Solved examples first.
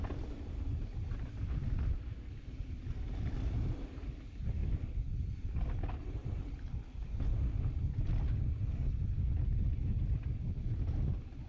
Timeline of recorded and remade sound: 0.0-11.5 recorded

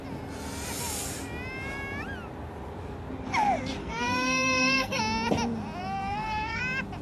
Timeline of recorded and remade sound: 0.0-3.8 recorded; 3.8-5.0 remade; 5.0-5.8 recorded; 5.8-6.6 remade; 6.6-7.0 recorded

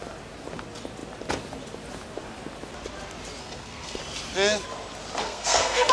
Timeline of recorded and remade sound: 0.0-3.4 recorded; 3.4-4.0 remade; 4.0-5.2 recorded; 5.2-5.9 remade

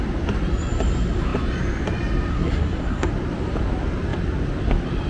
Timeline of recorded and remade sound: 0.0-2.3 recorded; 2.3-3.1 remade; 3.1-5.1 recorded